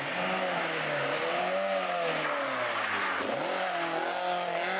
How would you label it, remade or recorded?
recorded